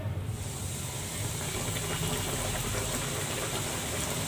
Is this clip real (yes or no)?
no